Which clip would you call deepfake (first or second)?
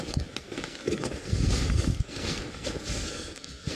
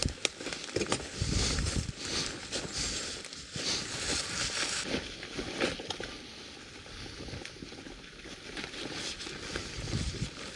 first